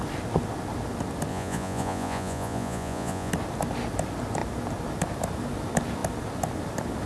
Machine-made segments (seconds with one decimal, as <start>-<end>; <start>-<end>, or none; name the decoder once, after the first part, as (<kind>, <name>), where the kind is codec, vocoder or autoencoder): 1.3-3.3 (vocoder, Vocos)